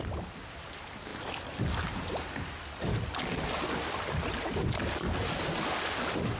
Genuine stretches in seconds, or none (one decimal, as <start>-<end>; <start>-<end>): 0.0-6.4